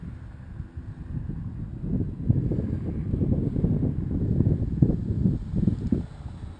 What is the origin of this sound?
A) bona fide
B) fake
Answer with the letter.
A